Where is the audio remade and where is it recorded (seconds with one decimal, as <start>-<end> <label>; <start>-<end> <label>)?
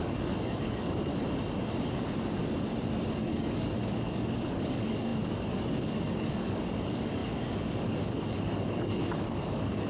0.0-1.1 remade; 1.1-3.1 recorded; 3.1-9.9 remade